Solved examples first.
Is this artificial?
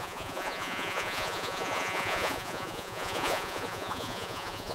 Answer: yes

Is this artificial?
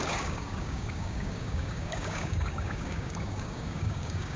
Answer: yes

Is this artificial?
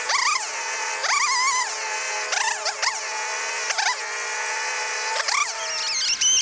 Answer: no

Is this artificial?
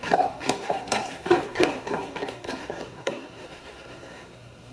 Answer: yes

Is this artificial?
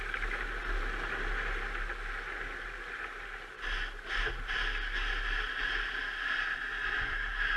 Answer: no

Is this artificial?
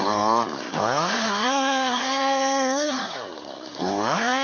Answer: yes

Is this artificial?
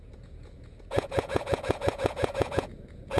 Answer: yes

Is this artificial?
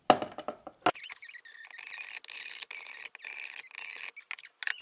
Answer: no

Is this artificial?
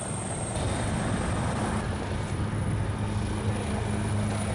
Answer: no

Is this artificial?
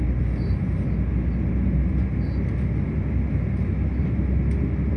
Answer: no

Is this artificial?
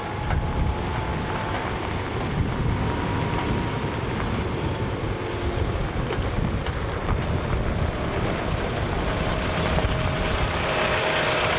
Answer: no